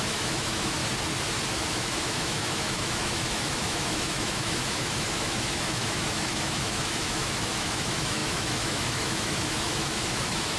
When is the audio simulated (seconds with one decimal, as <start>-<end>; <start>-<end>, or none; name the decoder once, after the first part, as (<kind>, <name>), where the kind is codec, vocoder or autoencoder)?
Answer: 0.0-0.8 (autoencoder, DAC-VAE); 1.7-10.6